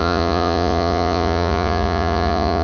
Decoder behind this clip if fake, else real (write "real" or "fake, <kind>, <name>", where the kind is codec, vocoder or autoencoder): fake, vocoder, Vocos